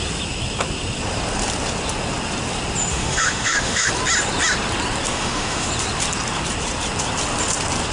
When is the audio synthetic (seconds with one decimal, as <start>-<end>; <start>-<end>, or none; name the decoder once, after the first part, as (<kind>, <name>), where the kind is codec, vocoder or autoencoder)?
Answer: 2.9-3.9 (autoencoder, DAC-VAE); 5.1-5.7